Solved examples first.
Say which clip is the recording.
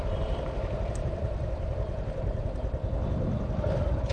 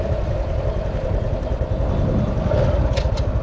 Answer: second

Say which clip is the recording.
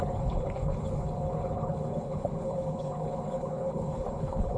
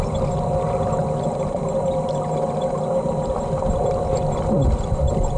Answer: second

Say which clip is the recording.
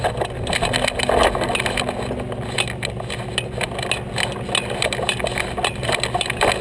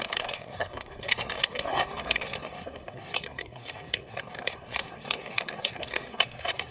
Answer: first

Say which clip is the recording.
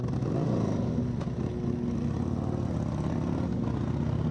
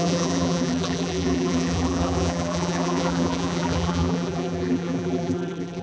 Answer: first